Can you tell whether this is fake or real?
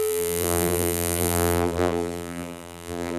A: fake